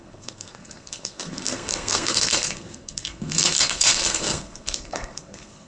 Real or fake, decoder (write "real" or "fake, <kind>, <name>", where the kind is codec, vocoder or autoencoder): fake, codec, SNAC